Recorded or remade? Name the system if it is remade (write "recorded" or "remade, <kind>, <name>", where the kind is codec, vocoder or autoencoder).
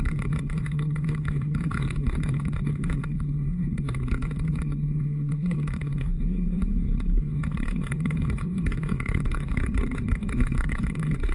remade, codec, SNAC